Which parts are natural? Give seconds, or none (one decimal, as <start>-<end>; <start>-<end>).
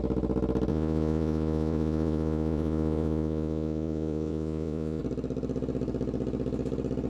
0.0-0.7; 5.0-7.1